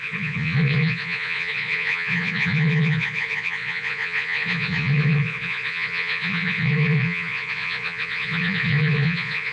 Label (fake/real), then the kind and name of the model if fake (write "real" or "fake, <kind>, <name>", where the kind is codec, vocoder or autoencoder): fake, vocoder, Vocos